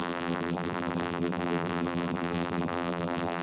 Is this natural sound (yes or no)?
no